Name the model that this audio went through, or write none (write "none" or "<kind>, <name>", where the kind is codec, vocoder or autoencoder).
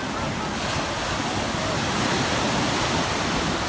none